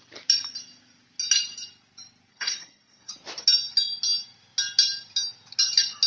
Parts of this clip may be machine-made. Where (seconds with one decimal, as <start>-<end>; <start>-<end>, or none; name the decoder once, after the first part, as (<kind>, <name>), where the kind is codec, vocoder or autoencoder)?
2.3-3.1 (codec, SNAC)